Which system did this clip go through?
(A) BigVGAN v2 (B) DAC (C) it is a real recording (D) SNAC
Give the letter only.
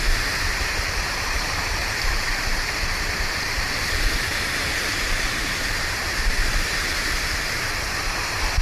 A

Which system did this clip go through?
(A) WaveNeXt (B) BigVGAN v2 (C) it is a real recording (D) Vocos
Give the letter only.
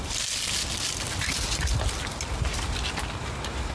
C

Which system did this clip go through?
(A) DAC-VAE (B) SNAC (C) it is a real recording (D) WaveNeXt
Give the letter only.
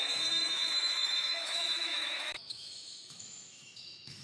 A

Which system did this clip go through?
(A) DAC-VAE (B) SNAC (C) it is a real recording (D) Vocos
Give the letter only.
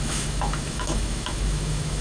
A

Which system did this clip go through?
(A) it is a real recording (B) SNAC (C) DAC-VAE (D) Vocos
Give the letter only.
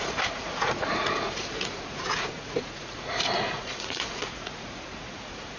D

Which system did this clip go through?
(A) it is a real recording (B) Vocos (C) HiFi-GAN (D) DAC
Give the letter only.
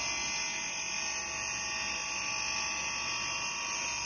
A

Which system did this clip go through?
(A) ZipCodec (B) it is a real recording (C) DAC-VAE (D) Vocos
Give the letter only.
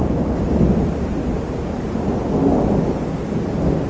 B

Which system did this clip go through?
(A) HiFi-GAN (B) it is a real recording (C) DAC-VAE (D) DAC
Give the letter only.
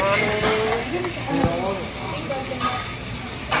B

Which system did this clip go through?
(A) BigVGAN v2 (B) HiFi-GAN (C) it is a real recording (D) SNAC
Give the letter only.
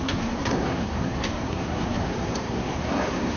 D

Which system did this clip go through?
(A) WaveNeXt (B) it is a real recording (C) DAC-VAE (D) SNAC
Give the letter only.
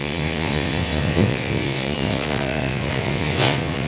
A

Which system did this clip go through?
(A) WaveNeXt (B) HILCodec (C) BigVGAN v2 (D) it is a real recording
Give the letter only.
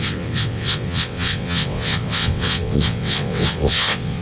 A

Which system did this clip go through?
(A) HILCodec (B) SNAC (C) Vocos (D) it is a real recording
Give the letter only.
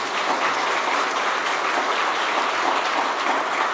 D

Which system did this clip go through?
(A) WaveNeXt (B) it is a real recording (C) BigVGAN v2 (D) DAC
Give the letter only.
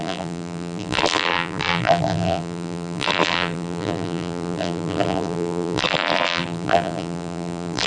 C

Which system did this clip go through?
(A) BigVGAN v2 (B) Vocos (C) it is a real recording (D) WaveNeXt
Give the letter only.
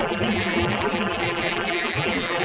A